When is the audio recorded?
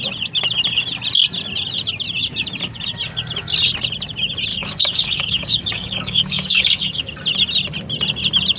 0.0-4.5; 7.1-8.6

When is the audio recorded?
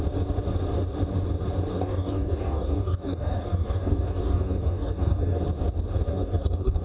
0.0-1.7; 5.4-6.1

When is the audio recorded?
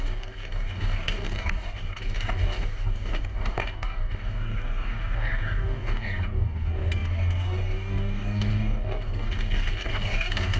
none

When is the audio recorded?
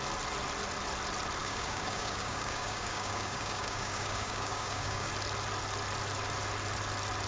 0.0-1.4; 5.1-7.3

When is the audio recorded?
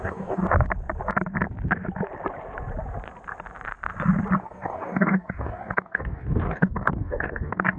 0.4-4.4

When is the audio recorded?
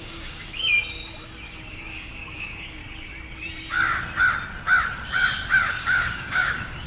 0.8-1.7; 2.8-5.8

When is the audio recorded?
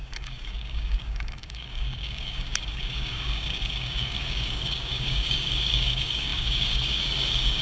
none